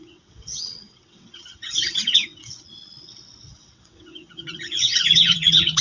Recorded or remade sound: remade